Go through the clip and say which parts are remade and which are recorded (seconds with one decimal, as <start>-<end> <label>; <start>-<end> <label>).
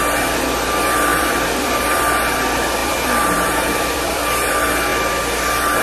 0.0-1.1 recorded; 1.1-2.0 remade; 2.0-2.8 recorded; 2.8-4.5 remade; 4.5-5.8 recorded